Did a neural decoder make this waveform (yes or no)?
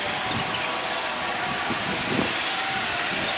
no